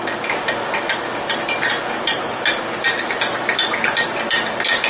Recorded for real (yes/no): yes